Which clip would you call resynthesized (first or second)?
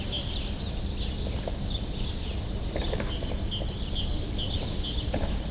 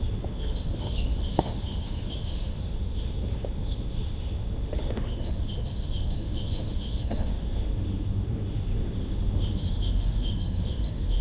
second